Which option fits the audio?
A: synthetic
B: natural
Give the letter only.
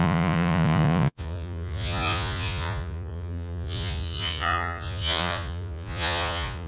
A